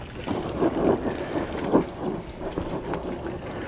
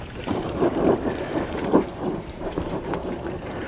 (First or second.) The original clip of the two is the first